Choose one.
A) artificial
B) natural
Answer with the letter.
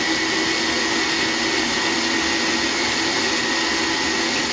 B